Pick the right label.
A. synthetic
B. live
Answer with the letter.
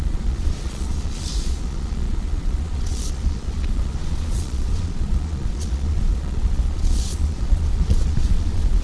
A